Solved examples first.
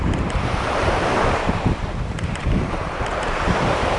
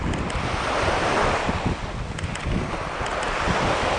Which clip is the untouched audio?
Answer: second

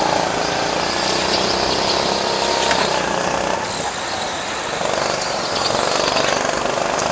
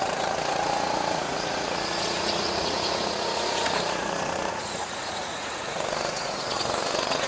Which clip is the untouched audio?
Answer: first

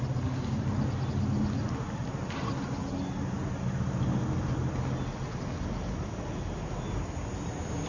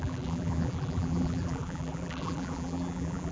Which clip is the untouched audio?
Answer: first